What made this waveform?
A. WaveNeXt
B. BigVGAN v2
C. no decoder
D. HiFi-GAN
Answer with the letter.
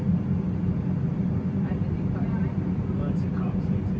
C